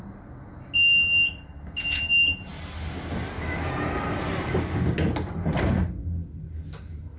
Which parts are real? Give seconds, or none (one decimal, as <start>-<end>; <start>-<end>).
0.0-7.2